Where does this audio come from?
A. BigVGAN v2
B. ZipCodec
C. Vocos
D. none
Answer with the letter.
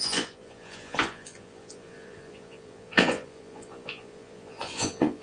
C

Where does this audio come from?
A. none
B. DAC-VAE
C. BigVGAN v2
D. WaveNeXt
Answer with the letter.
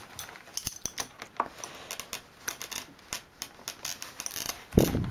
A